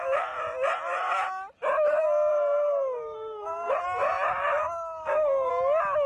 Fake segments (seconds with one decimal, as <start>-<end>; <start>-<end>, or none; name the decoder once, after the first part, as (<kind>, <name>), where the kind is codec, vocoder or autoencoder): 2.3-3.7 (codec, SNAC); 4.6-5.5